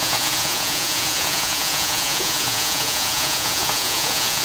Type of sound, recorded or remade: remade